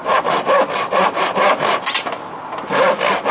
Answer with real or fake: real